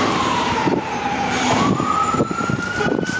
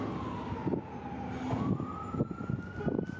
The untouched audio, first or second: second